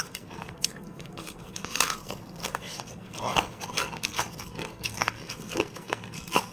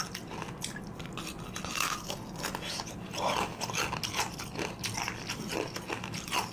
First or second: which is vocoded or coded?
first